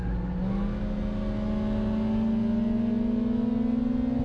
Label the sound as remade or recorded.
recorded